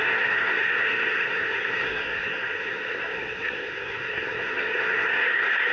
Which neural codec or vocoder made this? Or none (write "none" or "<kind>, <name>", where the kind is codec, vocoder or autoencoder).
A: codec, SNAC